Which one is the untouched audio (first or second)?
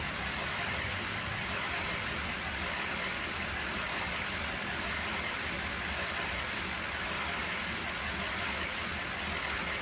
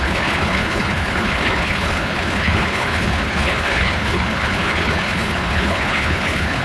first